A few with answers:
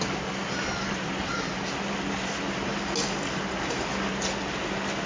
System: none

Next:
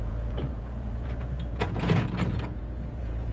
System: vocoder, Vocos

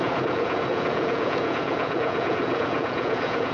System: vocoder, Vocos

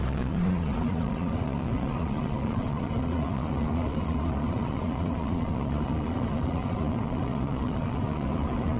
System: vocoder, Vocos